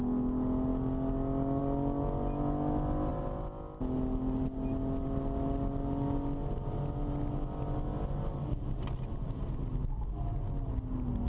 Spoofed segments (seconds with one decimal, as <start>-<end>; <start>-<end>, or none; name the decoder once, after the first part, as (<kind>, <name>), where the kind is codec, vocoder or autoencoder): none